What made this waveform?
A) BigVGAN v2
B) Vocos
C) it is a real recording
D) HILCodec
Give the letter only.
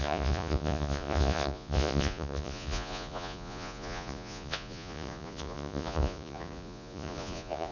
B